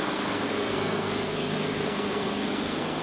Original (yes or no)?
no